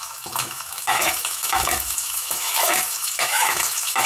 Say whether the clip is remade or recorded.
remade